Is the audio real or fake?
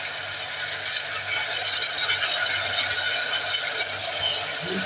real